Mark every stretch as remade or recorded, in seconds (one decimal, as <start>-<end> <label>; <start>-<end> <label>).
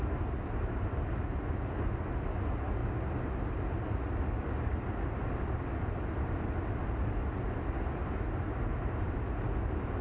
0.0-8.5 recorded; 8.5-9.3 remade; 9.3-10.0 recorded